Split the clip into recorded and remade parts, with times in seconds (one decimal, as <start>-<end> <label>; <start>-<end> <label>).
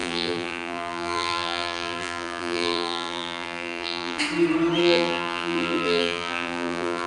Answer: 0.0-4.2 remade; 4.2-4.8 recorded; 4.8-7.1 remade